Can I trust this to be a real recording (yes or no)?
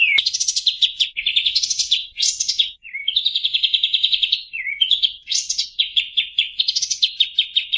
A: no